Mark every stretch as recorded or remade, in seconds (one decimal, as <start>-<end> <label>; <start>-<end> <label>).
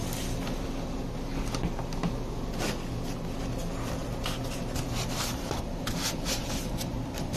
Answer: 0.0-4.0 recorded; 4.0-7.4 remade